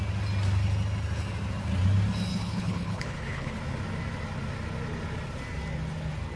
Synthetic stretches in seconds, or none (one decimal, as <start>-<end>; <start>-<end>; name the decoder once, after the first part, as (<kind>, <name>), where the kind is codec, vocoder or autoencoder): 2.3-3.6 (codec, HILCodec)